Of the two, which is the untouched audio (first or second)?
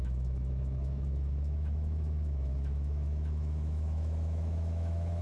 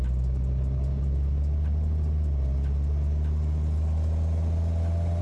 second